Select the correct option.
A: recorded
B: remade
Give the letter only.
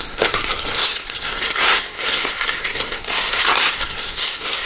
B